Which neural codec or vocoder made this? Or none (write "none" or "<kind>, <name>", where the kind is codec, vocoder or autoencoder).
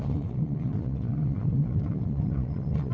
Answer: vocoder, Vocos